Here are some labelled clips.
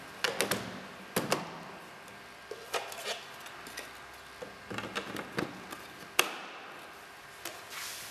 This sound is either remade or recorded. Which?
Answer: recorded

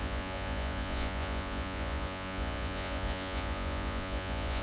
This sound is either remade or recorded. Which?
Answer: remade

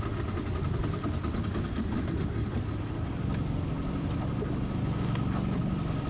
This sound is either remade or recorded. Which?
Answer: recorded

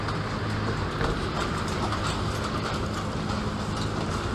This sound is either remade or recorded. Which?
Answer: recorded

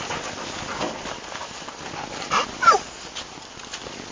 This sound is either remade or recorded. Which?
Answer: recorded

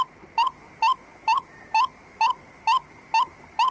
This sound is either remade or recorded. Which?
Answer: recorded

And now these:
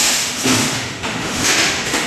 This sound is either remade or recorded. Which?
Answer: remade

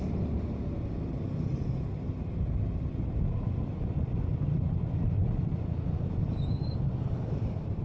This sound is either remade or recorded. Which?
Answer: recorded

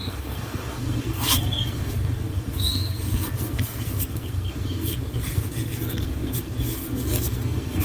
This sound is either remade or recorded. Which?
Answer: remade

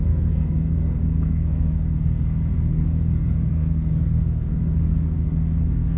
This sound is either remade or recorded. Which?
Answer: remade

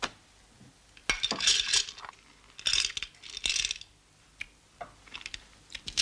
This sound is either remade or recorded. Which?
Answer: recorded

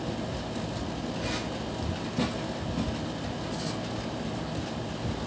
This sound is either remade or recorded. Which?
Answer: recorded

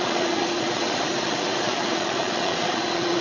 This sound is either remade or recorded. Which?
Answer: remade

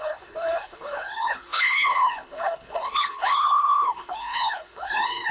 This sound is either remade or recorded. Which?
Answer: remade